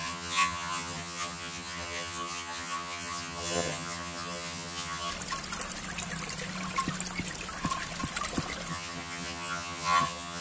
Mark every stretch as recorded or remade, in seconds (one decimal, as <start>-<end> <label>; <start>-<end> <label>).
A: 0.0-5.1 remade; 5.1-8.7 recorded; 8.7-10.4 remade